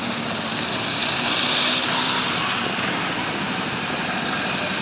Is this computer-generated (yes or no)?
no